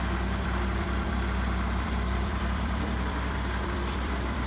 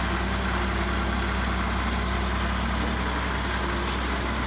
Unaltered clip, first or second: second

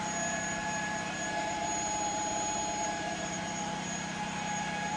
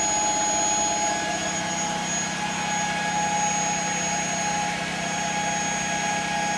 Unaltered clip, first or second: second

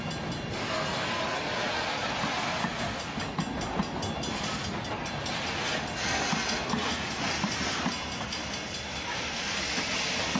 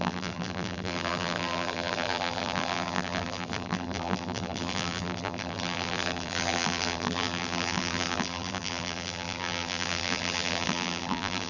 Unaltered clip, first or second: first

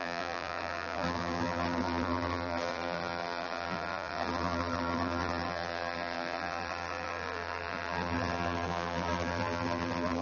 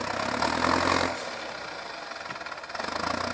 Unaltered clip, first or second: second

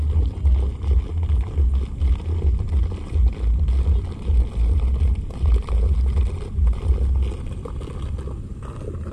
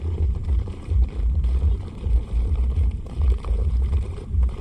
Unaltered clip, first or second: first